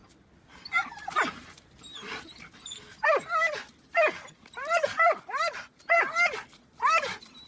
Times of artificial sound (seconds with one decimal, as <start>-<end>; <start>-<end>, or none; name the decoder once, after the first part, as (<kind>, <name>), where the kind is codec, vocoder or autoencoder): none